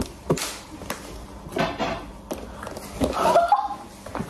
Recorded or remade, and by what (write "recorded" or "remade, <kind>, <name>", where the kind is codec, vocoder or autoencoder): recorded